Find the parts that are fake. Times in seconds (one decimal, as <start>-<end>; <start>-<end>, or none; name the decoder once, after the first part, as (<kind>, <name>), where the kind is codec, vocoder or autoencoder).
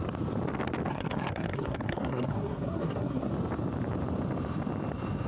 0.9-3.3 (codec, SNAC)